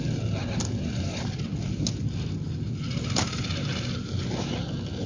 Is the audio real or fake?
real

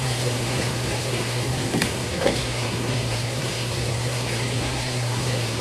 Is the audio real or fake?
fake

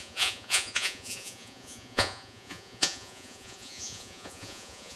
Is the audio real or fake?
fake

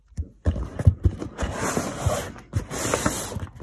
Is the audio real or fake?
real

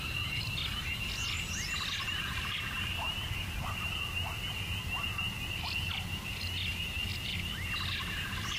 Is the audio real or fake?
fake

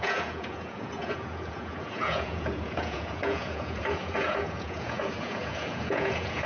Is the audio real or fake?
fake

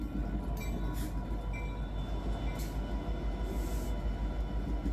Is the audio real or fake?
real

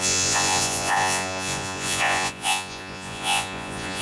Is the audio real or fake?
fake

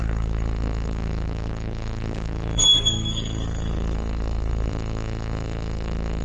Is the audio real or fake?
fake